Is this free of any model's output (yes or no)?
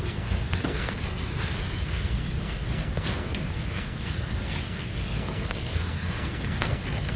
no